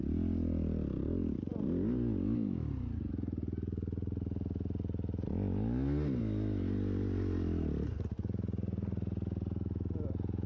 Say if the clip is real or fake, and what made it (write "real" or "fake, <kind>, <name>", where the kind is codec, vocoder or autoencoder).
real